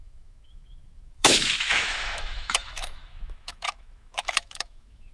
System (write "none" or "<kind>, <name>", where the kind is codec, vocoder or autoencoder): autoencoder, DAC-VAE